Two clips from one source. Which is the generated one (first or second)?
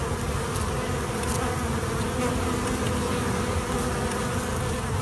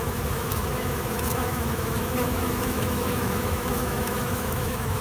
second